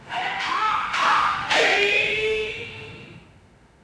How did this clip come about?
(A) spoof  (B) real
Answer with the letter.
A